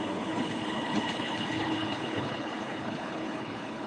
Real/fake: fake